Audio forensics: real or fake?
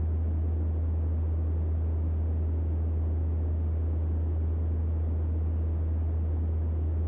real